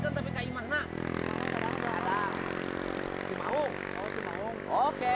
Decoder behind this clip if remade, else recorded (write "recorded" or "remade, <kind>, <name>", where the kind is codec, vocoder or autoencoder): recorded